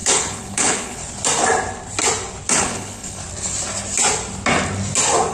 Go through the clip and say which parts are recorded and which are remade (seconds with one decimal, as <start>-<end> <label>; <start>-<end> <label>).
0.0-1.0 remade; 1.0-2.5 recorded; 2.5-3.2 remade; 3.2-5.3 recorded